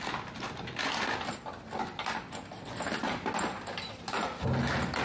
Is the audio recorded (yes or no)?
yes